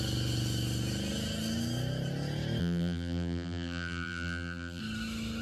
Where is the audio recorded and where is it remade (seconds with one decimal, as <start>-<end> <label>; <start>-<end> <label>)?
0.0-2.6 recorded; 2.6-4.8 remade; 4.8-5.4 recorded